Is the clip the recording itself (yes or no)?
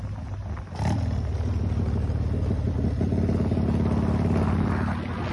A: yes